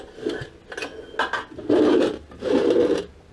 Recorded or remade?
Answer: recorded